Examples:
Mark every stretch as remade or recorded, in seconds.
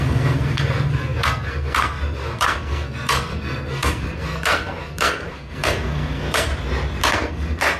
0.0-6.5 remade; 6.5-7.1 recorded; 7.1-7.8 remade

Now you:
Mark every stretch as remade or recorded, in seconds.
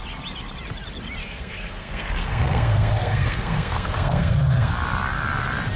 0.0-1.2 recorded; 1.2-4.7 remade; 4.7-5.8 recorded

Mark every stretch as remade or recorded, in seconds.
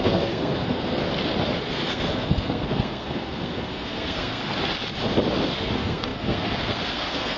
0.0-1.0 remade; 1.0-1.6 recorded; 1.6-4.4 remade; 4.4-5.5 recorded; 5.5-7.4 remade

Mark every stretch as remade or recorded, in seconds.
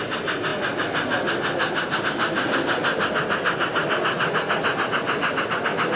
0.0-6.0 recorded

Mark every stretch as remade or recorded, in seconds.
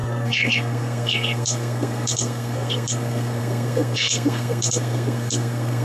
0.0-5.8 remade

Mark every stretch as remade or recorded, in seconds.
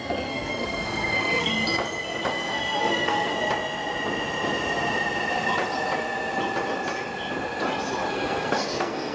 0.0-1.5 remade; 1.5-2.3 recorded; 2.3-3.3 remade; 3.3-8.1 recorded; 8.1-9.1 remade